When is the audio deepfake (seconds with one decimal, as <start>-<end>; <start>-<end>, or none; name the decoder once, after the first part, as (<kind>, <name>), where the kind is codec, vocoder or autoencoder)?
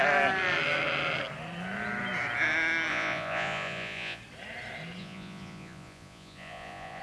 2.9-4.2 (vocoder, Vocos); 5.0-7.0